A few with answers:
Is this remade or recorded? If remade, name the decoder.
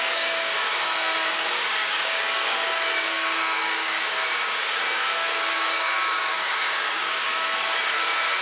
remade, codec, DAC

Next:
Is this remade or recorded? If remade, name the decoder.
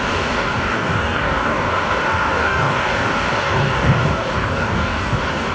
remade, codec, DAC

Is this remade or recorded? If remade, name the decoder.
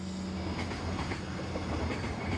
recorded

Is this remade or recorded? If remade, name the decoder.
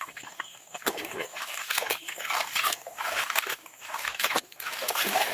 remade, codec, DAC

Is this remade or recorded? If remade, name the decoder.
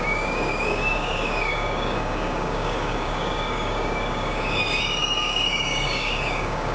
remade, codec, DAC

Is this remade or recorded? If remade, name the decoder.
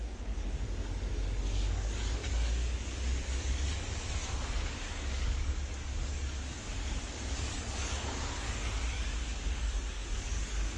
remade, codec, DAC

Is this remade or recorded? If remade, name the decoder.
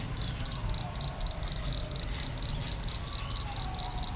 recorded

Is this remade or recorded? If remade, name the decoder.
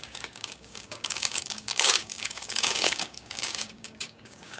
remade, codec, DAC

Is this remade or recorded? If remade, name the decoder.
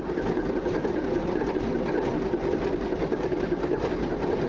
recorded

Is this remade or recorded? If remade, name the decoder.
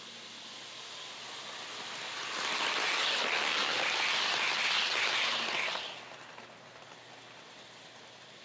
recorded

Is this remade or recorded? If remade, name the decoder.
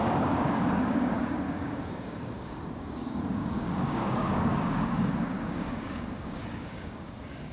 remade, codec, DAC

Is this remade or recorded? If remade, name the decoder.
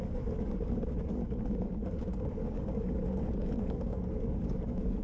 remade, codec, DAC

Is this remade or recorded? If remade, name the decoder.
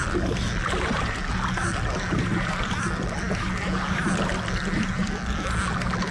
recorded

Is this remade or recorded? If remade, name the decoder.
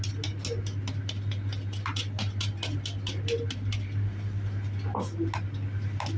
recorded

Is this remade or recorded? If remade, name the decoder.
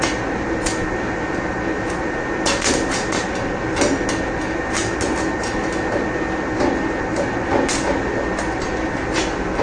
recorded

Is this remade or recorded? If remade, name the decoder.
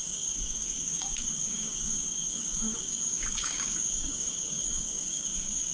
remade, codec, DAC